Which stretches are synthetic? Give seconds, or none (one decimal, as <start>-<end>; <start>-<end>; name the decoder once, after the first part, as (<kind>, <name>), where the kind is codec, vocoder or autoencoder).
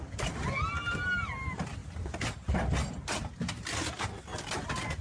none